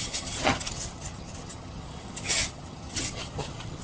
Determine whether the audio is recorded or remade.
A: remade